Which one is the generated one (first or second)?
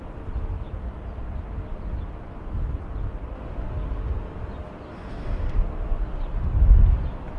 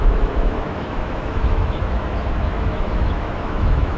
second